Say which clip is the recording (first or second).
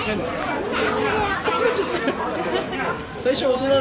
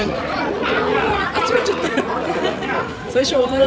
first